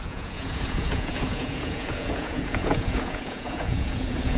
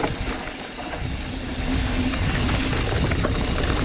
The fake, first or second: first